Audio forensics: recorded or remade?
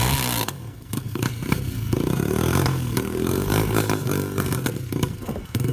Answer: remade